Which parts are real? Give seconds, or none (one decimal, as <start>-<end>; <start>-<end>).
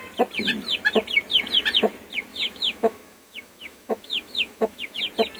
0.0-2.3; 5.0-5.4